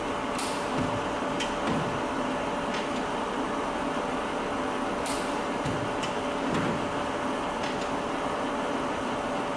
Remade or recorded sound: recorded